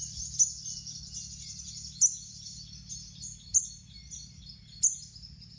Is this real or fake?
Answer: real